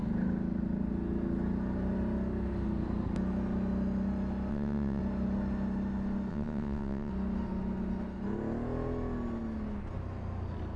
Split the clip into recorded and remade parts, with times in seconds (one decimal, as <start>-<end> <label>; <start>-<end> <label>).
0.0-4.5 recorded; 4.5-5.0 remade; 5.0-6.3 recorded; 6.3-7.1 remade; 7.1-10.8 recorded